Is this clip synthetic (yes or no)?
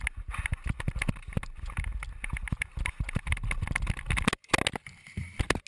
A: no